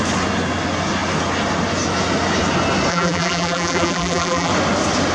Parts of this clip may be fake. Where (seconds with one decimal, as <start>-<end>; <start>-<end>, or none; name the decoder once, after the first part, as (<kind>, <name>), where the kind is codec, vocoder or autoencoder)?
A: 2.9-4.5 (vocoder, BigVGAN v2)